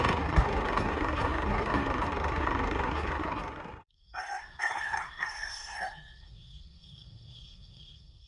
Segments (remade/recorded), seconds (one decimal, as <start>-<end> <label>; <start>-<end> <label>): 0.0-8.3 remade